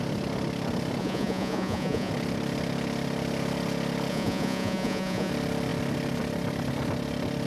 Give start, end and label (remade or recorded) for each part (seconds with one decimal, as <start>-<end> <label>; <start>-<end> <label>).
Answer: 0.0-1.0 recorded; 1.0-2.1 remade; 2.1-4.1 recorded; 4.1-5.3 remade; 5.3-7.5 recorded